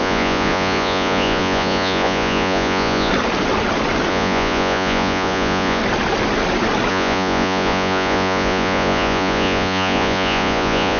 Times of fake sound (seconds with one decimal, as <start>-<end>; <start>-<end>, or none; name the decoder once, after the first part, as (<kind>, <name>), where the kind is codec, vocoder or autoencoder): 0.0-3.1 (vocoder, Vocos); 4.1-5.8; 6.9-11.0